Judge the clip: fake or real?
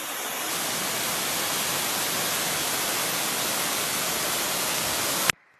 real